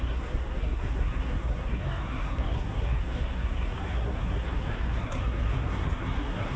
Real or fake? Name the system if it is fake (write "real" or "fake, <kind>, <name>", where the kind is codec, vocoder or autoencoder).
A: fake, codec, SNAC